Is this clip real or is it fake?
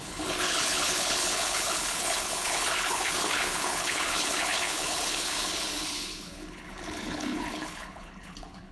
fake